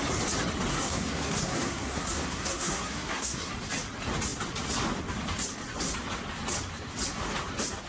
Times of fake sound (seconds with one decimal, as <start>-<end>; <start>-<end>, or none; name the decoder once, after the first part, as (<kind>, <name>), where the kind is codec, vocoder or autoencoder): 0.7-3.5 (codec, SNAC)